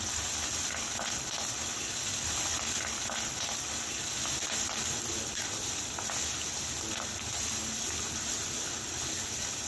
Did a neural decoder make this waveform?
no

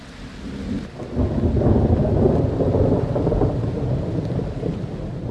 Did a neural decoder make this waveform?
no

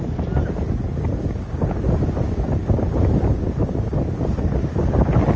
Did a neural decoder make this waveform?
no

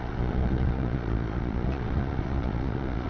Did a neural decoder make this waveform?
yes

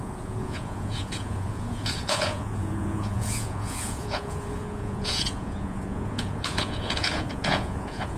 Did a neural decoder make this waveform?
yes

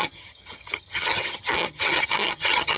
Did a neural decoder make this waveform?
yes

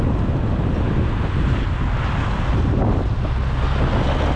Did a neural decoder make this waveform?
no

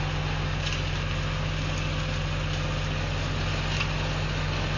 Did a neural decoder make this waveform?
no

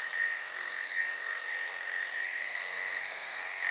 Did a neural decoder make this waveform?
yes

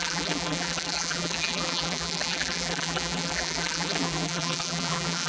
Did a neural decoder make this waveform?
yes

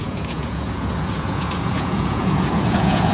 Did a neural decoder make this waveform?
yes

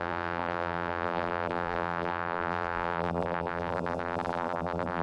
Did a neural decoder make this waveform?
yes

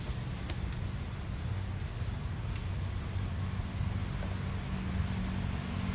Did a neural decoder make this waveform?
no